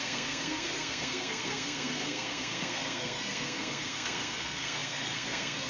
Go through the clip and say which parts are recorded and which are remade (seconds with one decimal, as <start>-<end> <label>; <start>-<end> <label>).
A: 0.0-5.7 remade